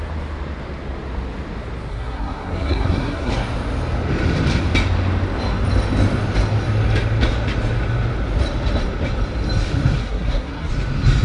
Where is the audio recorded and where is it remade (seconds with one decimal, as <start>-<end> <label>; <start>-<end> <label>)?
0.0-1.9 recorded; 1.9-3.3 remade; 3.3-10.0 recorded; 10.0-10.7 remade; 10.7-11.2 recorded